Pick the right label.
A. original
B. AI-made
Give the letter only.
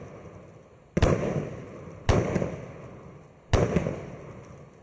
A